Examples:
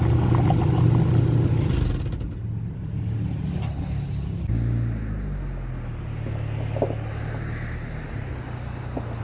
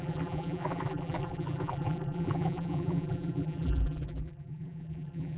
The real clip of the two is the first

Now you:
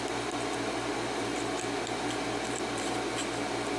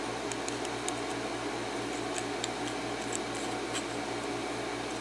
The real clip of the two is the second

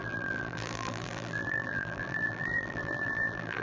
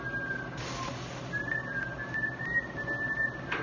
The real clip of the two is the second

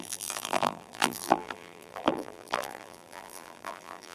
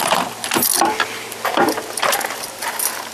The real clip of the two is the second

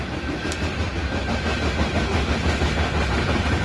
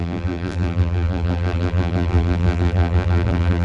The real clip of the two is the first